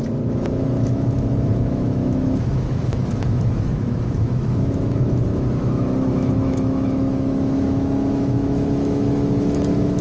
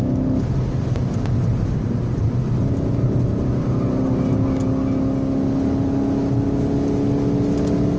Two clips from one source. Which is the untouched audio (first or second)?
second